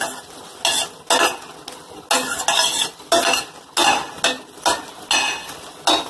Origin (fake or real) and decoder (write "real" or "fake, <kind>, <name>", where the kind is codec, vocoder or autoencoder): real